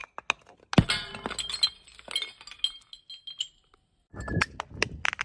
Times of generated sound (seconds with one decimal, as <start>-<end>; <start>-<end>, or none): none